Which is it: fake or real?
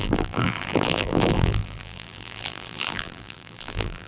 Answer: fake